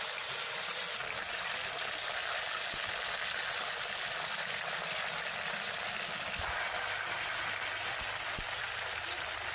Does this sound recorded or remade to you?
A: recorded